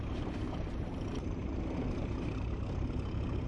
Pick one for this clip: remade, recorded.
remade